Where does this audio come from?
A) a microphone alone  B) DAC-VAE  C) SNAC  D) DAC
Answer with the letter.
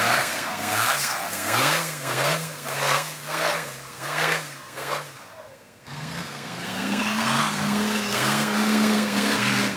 C